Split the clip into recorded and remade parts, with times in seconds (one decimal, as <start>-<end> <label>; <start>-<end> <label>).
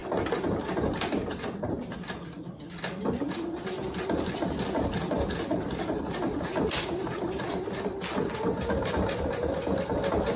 0.0-10.4 recorded